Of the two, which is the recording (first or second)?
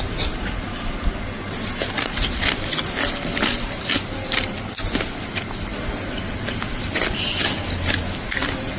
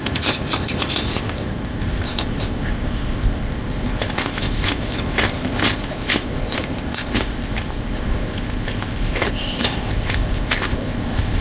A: first